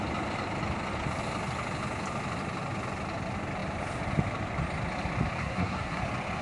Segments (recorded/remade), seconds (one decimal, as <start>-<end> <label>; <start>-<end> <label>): 0.0-5.4 recorded; 5.4-6.0 remade; 6.0-6.4 recorded